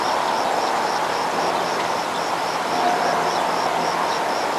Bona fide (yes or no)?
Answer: yes